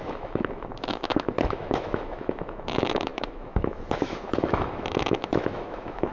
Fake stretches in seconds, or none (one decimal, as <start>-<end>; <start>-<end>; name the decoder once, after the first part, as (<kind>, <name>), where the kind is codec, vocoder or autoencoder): 0.0-6.1 (autoencoder, DAC-VAE)